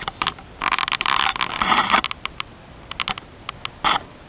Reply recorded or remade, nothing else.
recorded